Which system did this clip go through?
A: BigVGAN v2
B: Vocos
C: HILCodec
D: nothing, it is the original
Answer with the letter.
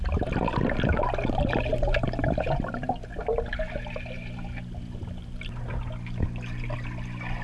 D